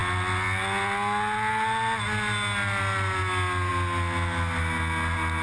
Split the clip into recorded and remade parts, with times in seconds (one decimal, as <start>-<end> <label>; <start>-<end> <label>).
0.0-5.4 recorded